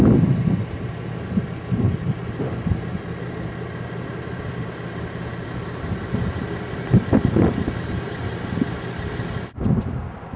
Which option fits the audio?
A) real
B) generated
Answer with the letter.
A